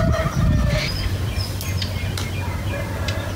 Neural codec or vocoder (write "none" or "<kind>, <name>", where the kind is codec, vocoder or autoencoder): none